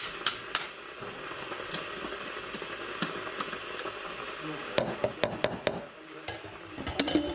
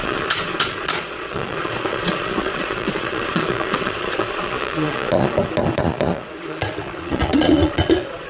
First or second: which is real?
first